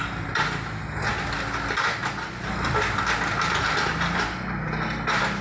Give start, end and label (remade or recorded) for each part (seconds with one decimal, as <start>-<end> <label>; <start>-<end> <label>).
0.0-5.4 recorded